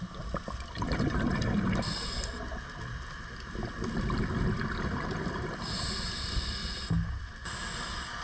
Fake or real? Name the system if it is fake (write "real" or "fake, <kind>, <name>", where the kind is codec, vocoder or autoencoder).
real